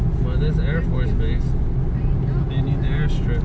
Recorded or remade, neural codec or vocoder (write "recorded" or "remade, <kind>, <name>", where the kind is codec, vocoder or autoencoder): recorded